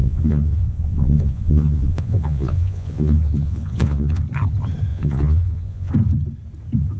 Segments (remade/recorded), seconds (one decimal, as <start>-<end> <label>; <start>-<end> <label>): 0.0-4.2 remade; 4.2-4.9 recorded; 4.9-5.9 remade; 5.9-7.0 recorded